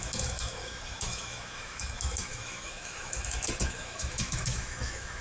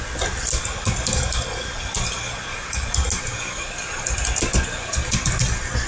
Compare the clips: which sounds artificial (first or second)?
first